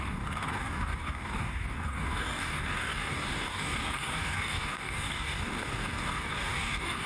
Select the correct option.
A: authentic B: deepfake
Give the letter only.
B